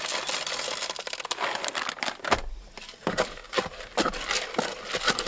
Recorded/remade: recorded